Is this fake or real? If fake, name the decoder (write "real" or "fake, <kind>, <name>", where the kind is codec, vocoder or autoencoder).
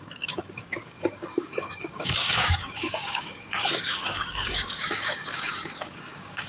fake, codec, DAC